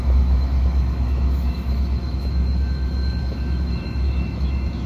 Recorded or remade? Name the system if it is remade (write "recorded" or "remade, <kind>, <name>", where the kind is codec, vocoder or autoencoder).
remade, autoencoder, DAC-VAE